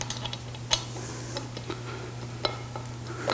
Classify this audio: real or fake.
real